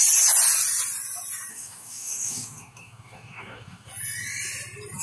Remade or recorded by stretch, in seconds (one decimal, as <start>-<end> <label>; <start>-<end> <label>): 0.0-1.5 recorded; 1.5-3.9 remade; 3.9-5.0 recorded